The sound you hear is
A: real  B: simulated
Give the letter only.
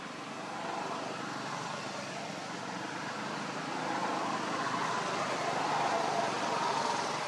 A